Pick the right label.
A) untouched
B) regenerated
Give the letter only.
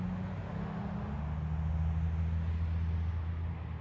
A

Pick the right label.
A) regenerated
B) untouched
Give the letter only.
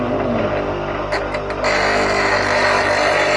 B